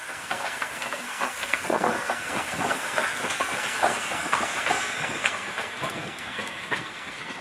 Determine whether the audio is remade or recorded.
remade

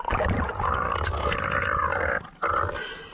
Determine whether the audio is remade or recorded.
recorded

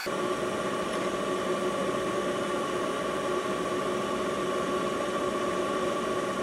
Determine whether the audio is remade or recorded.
recorded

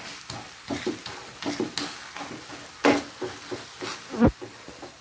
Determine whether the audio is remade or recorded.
recorded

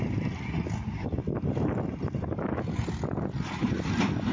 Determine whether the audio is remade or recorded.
recorded